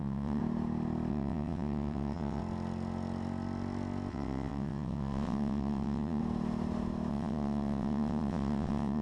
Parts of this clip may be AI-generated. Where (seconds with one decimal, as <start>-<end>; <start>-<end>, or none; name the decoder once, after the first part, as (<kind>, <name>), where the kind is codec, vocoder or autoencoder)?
0.0-0.4 (vocoder, WaveNeXt); 1.1-2.4; 4.1-6.2; 7.1-9.0